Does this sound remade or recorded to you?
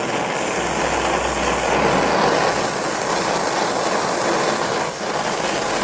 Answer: recorded